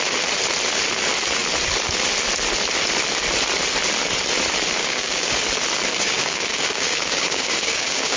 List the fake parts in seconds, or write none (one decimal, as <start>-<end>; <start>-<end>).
4.8-5.3; 5.9-8.2